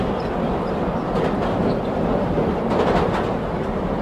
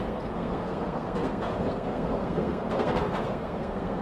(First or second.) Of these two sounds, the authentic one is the first